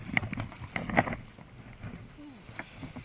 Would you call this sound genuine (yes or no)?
yes